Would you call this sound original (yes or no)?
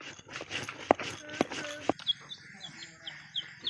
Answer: yes